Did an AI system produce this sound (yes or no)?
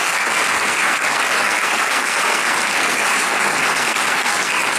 yes